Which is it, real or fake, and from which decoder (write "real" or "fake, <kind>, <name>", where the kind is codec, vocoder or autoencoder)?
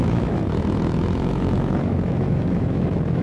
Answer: fake, autoencoder, DAC-VAE